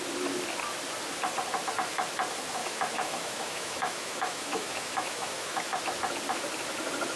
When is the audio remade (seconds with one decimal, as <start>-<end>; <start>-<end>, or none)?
2.6-5.8